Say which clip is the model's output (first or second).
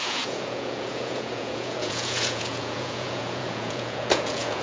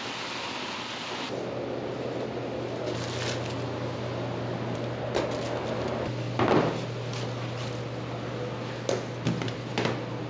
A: first